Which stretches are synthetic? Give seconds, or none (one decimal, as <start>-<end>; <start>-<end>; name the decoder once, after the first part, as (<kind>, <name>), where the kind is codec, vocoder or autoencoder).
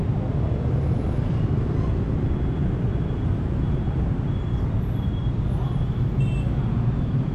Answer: 3.2-7.3 (vocoder, BigVGAN v2)